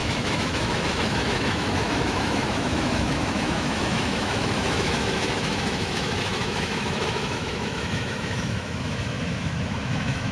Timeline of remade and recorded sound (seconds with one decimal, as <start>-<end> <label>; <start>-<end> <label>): 0.0-10.3 remade